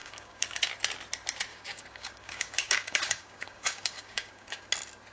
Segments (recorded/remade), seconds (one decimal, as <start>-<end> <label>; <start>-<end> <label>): 0.0-0.7 remade; 0.7-1.5 recorded; 1.5-4.6 remade; 4.6-5.1 recorded